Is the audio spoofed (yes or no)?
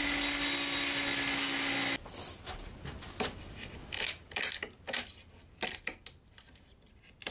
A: no